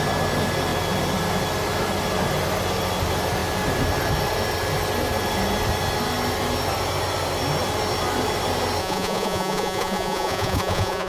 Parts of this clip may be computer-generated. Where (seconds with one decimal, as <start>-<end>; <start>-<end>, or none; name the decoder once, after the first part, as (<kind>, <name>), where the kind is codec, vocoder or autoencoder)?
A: 8.8-11.1 (vocoder, Vocos)